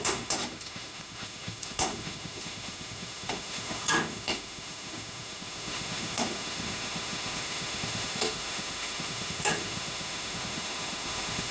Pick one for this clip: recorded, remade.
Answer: remade